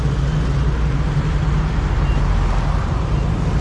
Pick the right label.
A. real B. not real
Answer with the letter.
A